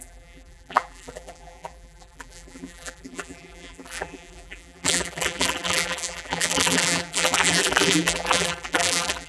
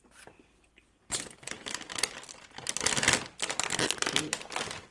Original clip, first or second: second